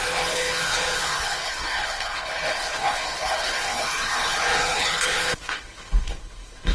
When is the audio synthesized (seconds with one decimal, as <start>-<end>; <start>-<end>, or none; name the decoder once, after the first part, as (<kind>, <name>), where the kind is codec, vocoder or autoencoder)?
0.0-6.7 (codec, HILCodec)